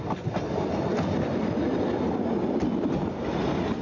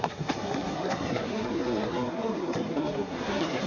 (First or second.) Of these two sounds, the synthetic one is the second